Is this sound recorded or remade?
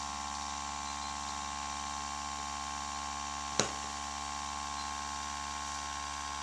recorded